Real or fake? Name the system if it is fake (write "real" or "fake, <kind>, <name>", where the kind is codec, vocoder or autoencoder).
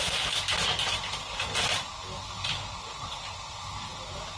real